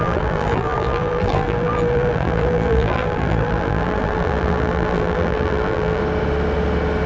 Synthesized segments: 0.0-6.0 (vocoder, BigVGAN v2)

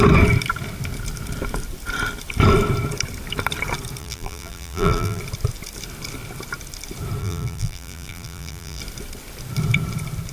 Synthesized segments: 4.0-5.2 (vocoder, BigVGAN v2); 7.2-8.8

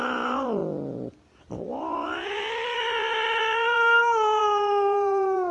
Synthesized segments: 0.0-0.6 (vocoder, BigVGAN v2); 1.4-5.5